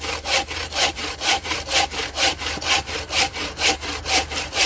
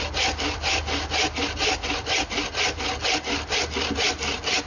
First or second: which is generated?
first